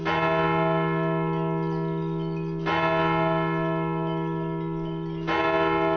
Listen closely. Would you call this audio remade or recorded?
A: recorded